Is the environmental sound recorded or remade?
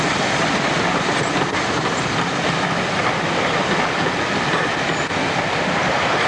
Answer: recorded